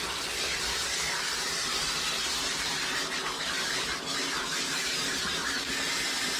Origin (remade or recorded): recorded